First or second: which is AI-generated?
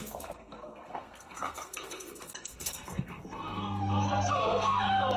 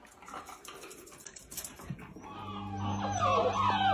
first